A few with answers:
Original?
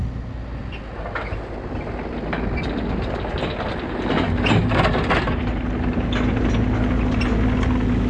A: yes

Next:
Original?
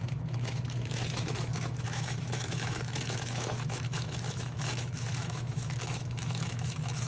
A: no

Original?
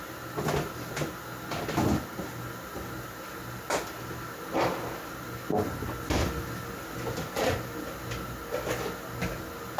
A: yes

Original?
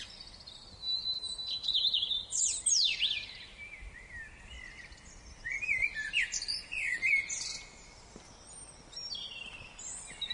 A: yes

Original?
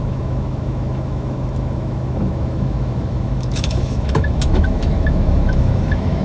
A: no